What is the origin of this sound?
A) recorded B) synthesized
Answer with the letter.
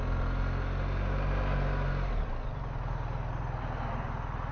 A